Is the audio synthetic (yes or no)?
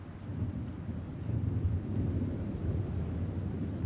no